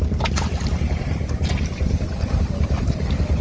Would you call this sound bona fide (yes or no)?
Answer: yes